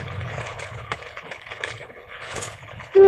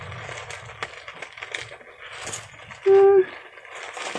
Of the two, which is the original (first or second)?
second